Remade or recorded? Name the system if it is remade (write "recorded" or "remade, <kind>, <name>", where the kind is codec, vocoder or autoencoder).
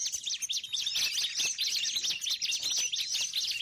recorded